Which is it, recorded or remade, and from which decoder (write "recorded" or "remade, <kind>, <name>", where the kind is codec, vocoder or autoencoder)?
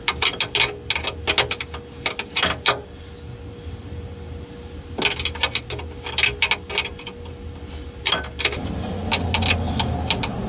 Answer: recorded